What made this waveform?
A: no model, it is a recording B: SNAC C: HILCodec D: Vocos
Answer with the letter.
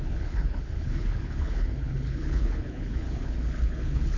C